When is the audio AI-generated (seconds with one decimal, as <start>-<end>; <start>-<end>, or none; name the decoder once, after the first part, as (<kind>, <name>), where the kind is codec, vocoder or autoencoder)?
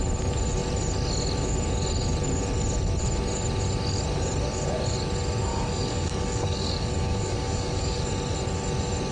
5.5-8.0 (codec, DAC)